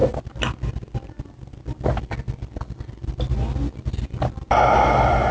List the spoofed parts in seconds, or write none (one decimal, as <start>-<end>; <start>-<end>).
none